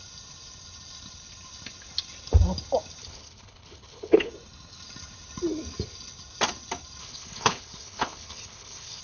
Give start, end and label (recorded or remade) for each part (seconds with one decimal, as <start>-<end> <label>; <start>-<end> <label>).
0.0-3.0 recorded; 3.0-4.3 remade; 4.3-7.0 recorded; 7.0-9.0 remade